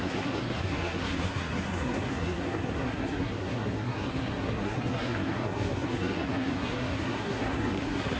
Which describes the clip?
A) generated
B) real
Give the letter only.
A